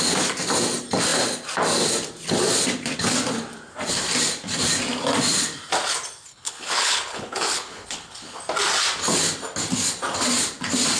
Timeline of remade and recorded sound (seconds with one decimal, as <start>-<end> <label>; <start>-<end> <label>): 0.0-6.3 recorded; 6.3-8.4 remade; 8.4-11.0 recorded